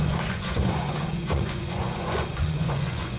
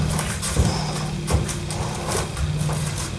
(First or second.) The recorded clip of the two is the second